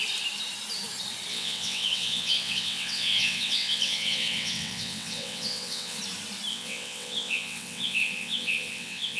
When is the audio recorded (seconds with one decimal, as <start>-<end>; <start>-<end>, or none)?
0.0-1.3; 6.0-6.5